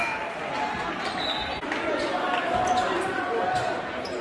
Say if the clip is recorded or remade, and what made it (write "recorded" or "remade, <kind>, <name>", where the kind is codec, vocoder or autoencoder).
recorded